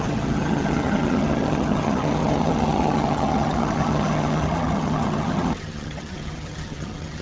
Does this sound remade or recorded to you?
remade